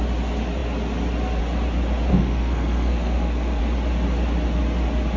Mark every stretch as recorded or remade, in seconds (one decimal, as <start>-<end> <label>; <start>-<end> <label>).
0.0-2.1 recorded; 2.1-3.6 remade; 3.6-5.2 recorded